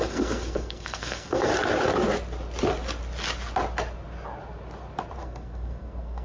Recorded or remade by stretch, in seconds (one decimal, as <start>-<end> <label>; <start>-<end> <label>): 0.0-1.5 remade; 1.5-5.2 recorded; 5.2-6.2 remade